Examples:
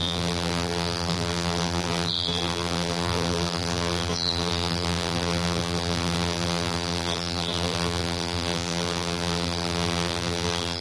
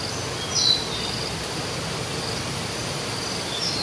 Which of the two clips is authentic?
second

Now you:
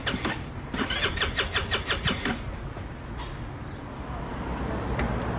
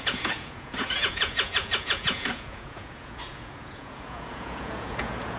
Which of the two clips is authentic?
first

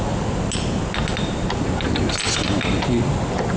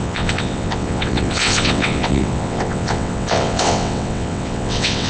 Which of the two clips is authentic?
first